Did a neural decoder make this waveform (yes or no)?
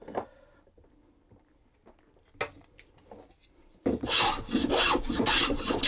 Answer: no